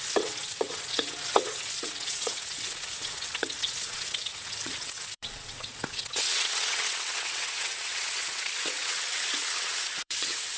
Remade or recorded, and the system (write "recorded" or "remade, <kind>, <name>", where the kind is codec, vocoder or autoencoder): remade, vocoder, WaveNeXt